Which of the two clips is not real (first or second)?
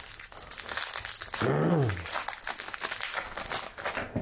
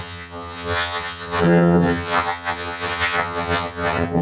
second